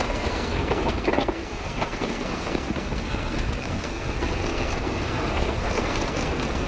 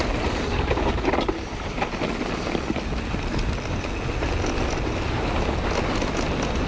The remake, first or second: first